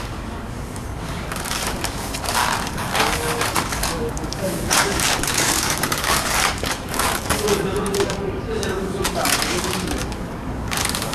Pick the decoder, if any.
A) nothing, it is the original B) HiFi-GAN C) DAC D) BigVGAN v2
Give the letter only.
C